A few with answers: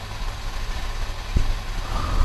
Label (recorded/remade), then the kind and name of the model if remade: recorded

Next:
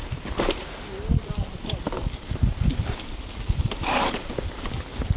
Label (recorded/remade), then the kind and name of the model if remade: recorded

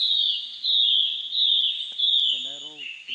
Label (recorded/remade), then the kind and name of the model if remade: recorded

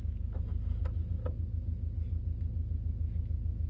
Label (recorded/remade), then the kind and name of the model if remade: recorded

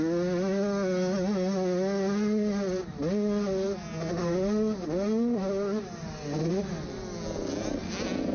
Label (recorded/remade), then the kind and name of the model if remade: recorded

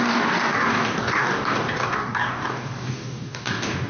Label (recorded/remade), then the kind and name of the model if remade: remade, codec, DAC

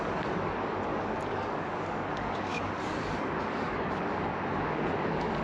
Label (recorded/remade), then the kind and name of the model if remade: remade, codec, DAC